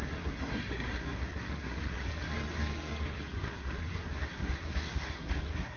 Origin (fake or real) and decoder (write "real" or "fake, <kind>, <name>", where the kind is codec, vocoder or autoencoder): fake, codec, SNAC